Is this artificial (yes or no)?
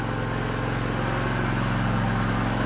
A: no